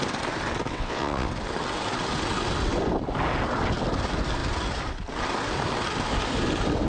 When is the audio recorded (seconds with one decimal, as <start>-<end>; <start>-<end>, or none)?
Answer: 0.0-0.7; 1.3-6.9